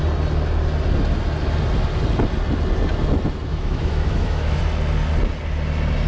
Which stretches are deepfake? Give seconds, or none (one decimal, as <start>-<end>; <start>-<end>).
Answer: 3.5-4.6